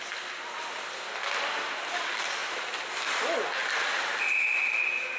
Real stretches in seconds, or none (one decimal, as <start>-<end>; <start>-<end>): 0.0-5.2